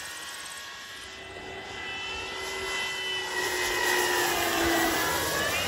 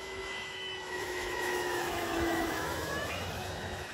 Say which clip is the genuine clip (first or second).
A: first